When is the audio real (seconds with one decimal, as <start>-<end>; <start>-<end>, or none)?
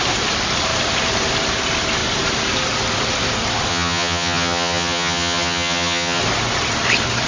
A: 0.0-3.7; 6.2-7.3